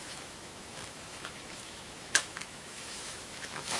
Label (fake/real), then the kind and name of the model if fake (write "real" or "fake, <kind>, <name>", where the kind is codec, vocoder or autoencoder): fake, autoencoder, DAC-VAE